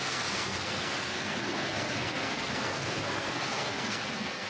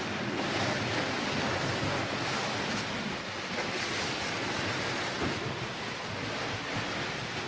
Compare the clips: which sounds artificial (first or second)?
first